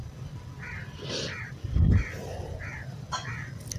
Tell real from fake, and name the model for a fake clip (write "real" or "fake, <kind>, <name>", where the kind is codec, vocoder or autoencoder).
real